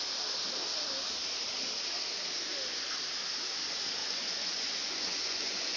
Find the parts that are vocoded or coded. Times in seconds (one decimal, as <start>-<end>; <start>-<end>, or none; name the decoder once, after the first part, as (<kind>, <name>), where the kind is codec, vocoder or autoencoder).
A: 4.0-5.8 (vocoder, Vocos)